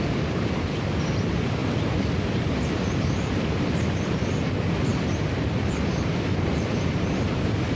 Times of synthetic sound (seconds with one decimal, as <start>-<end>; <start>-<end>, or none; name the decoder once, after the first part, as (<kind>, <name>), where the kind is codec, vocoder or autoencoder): 1.6-2.5 (vocoder, BigVGAN v2); 4.9-6.7